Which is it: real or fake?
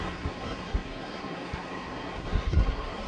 fake